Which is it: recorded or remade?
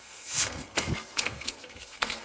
remade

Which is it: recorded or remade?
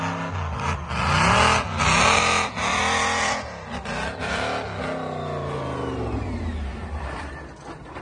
recorded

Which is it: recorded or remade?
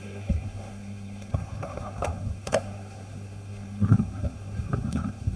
remade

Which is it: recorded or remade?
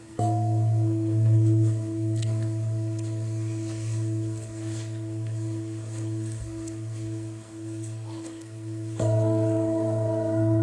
remade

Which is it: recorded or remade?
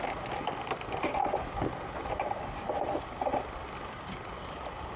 recorded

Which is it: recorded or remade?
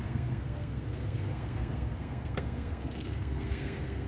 remade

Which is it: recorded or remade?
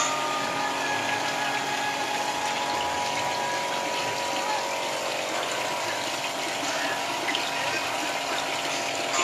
recorded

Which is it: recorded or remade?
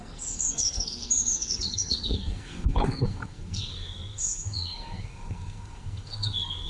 remade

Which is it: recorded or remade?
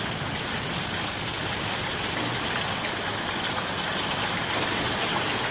recorded